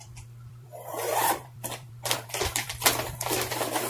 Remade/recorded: remade